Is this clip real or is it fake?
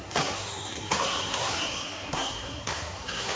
fake